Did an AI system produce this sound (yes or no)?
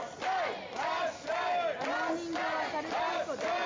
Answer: no